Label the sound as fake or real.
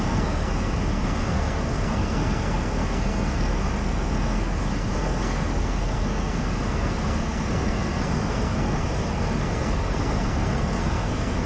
fake